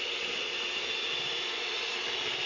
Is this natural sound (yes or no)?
yes